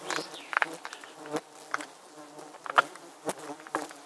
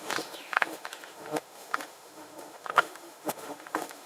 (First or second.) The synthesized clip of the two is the second